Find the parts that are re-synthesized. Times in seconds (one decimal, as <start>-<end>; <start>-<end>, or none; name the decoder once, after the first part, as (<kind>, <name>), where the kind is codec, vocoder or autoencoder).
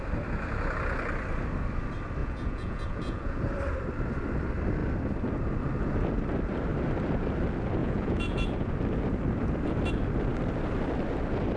2.2-3.4 (vocoder, Vocos); 7.8-8.7